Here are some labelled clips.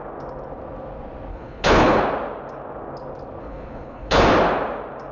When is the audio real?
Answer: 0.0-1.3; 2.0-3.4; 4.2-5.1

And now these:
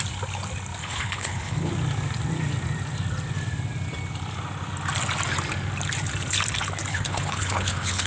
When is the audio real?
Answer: 0.0-0.8; 1.7-6.9

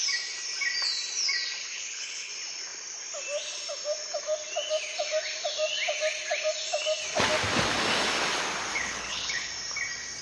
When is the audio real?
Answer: 0.0-1.6; 2.3-8.7; 9.5-10.2

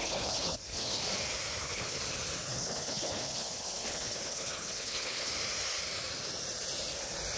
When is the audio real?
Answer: 1.0-1.6; 2.0-2.5; 5.3-7.4

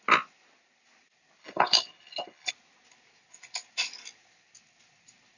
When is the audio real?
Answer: 0.0-1.4; 2.5-5.4

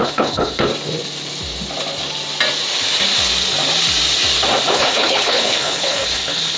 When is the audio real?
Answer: 0.7-4.7